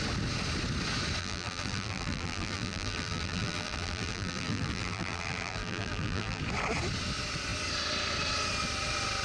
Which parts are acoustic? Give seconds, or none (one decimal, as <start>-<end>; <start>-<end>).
0.0-1.2; 6.4-9.2